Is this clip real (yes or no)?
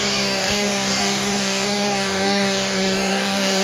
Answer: no